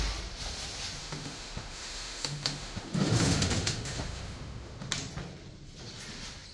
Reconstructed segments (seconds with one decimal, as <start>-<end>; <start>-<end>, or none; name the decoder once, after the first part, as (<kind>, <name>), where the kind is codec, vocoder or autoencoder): 1.0-4.9 (autoencoder, DAC-VAE)